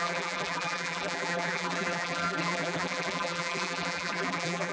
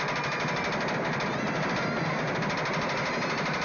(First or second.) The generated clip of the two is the first